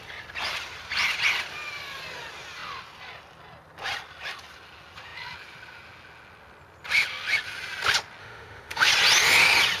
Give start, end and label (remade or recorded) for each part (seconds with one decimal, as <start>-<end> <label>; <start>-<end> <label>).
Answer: 0.0-8.2 recorded; 8.2-8.9 remade; 8.9-9.8 recorded